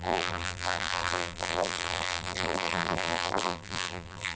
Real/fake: fake